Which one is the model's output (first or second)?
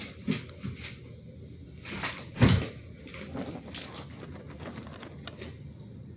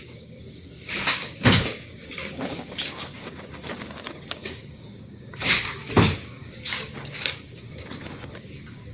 second